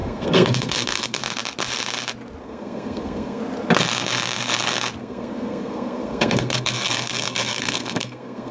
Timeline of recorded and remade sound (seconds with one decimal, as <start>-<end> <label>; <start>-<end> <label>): 0.0-1.2 remade; 1.2-2.4 recorded; 2.4-3.4 remade; 3.4-5.0 recorded; 5.0-8.5 remade